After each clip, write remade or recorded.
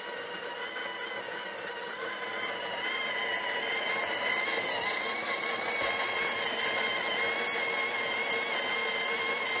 recorded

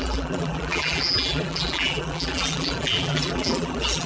remade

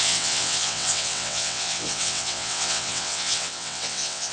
remade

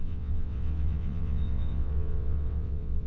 remade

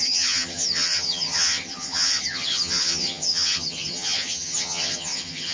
remade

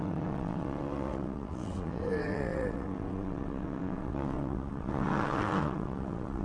remade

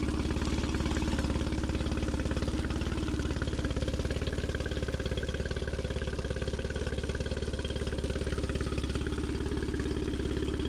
recorded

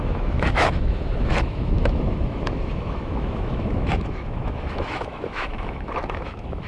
remade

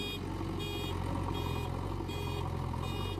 recorded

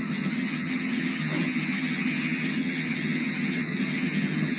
remade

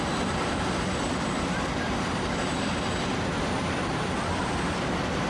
remade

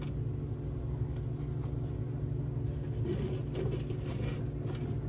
recorded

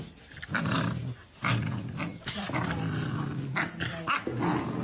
recorded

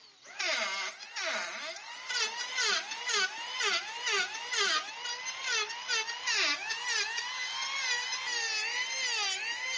recorded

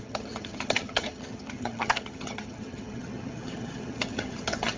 remade